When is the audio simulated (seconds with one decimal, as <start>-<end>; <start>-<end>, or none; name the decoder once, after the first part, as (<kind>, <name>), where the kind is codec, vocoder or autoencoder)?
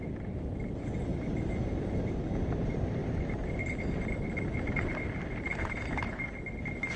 1.1-2.2 (vocoder, BigVGAN v2); 3.0-3.6; 5.5-6.2